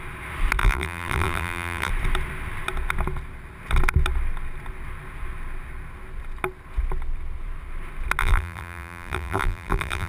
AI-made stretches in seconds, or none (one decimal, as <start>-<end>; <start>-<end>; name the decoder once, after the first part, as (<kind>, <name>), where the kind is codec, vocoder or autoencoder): 0.6-1.9 (vocoder, BigVGAN v2); 8.2-10.1